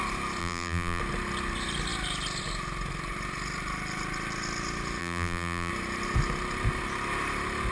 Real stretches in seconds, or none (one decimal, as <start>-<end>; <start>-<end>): 0.0-0.4; 1.0-5.0; 5.7-7.7